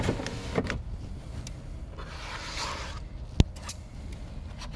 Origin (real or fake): real